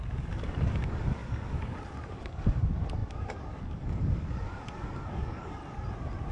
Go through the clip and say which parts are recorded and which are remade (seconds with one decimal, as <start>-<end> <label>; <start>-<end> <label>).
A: 0.0-5.6 remade; 5.6-6.3 recorded